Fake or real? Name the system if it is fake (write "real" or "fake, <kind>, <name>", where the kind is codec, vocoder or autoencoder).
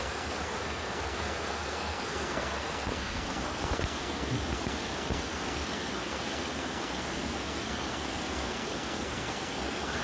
fake, codec, SNAC